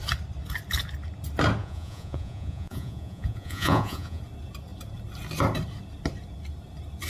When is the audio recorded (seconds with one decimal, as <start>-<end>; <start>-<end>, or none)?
0.0-1.6; 4.2-7.1